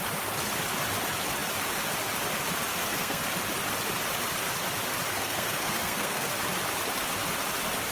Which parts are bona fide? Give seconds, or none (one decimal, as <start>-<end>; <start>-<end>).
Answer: 0.0-2.7; 3.2-5.2; 6.3-7.9